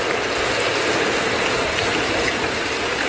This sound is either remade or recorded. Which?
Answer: recorded